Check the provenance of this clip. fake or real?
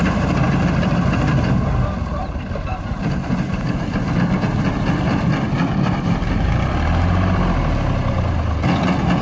real